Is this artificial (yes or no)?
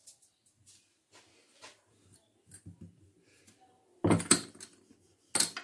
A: no